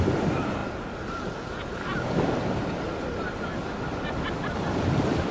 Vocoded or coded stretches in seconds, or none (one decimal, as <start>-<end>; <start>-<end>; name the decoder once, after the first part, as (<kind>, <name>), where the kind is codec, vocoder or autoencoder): none